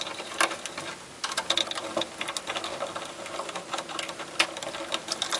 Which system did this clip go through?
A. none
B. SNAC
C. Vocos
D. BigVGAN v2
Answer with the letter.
A